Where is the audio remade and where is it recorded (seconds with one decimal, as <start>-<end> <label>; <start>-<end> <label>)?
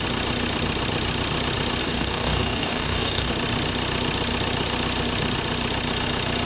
0.0-1.8 recorded; 1.8-3.3 remade; 3.3-6.5 recorded